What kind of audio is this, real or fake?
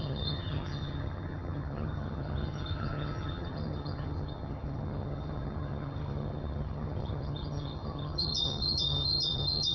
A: fake